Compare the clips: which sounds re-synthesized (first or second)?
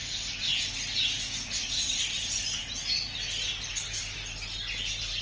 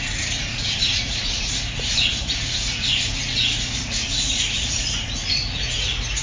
second